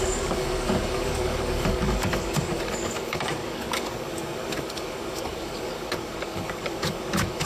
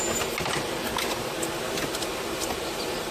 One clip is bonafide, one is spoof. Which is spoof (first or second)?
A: first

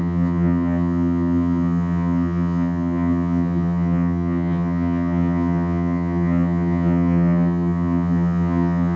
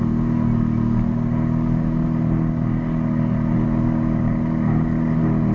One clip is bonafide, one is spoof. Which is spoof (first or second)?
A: first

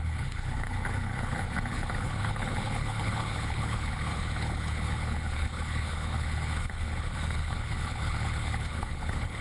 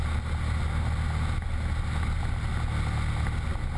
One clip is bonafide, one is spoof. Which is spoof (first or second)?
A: first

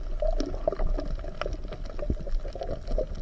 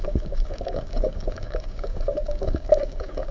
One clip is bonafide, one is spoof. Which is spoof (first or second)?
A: second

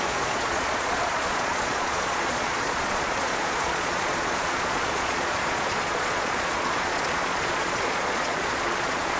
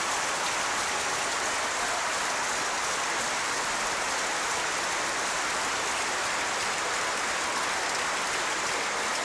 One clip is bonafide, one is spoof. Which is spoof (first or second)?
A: first